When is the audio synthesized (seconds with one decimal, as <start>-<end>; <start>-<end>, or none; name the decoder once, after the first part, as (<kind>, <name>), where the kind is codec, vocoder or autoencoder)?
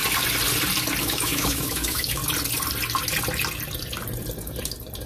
1.0-2.2 (autoencoder, DAC-VAE)